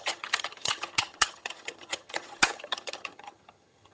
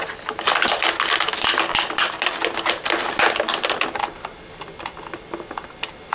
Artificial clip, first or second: first